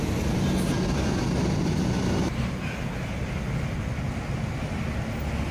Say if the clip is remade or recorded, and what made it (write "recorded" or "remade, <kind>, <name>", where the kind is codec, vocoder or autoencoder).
recorded